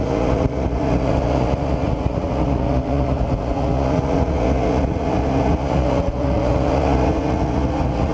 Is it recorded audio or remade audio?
remade